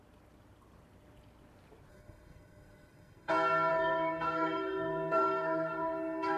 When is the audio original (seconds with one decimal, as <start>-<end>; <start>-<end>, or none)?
0.0-1.9; 3.3-3.7